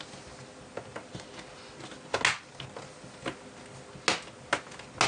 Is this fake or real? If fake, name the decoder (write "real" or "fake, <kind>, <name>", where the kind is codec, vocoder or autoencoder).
real